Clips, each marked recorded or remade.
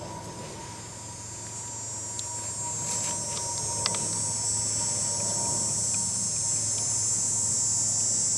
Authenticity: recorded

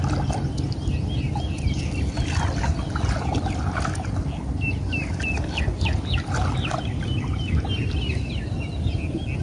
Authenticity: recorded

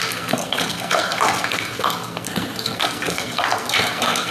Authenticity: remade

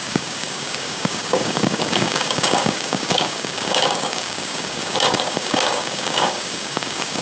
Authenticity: remade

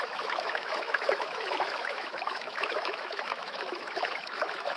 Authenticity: remade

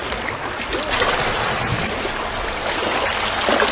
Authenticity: recorded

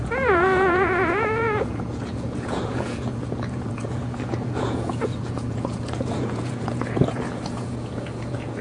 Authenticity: remade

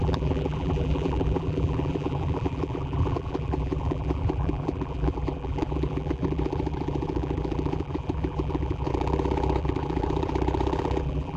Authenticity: remade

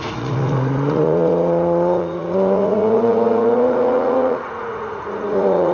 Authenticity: remade